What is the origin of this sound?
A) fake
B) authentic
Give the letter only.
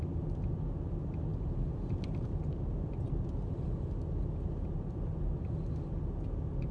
B